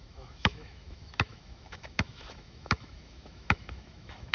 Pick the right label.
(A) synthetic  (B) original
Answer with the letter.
A